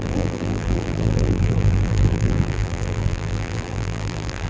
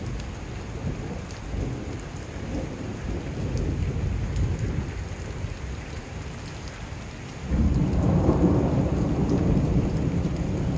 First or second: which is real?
second